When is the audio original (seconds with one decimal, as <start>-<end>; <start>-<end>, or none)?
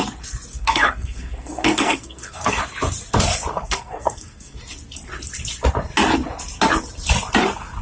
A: 0.0-0.5; 2.6-3.5; 4.6-7.8